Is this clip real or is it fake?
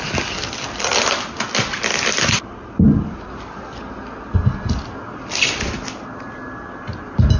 real